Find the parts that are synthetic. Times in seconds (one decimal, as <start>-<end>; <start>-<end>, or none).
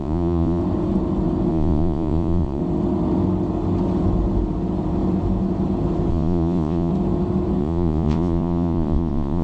0.0-0.6; 1.5-2.6; 6.1-6.9; 7.6-9.4